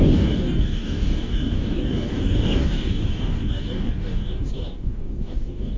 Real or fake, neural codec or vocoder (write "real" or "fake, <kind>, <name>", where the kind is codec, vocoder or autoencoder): fake, codec, DAC